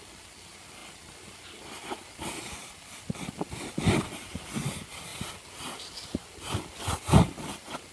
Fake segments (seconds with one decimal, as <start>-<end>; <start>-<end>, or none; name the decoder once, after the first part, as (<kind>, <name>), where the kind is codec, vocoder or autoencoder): none